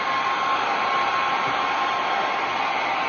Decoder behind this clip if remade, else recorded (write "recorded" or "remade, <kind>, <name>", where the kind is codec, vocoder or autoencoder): recorded